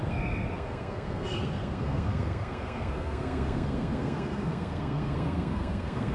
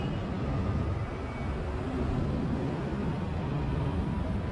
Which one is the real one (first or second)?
second